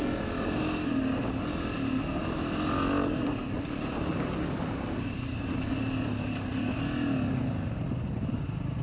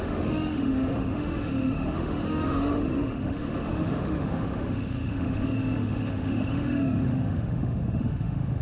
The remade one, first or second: second